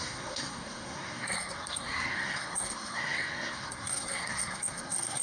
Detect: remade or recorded remade